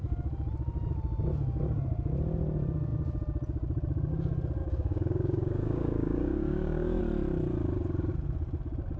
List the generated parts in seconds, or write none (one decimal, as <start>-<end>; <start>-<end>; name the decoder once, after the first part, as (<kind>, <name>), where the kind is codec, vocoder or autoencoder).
4.6-7.0 (codec, DAC)